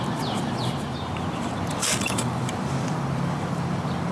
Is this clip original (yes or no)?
no